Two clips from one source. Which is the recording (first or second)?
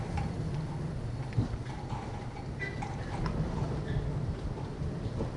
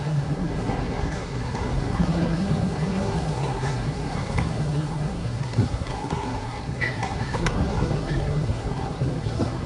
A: first